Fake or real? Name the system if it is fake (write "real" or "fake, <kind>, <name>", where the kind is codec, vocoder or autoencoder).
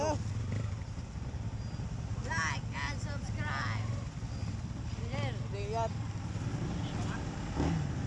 real